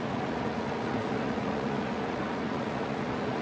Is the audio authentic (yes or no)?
no